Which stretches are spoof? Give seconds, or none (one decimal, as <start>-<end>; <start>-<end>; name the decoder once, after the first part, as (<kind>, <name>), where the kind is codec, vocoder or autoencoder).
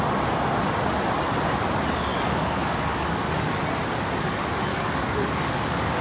2.1-3.6 (codec, DAC); 4.7-6.0